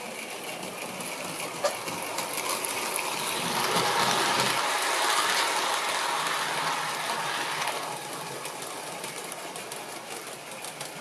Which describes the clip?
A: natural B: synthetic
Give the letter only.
A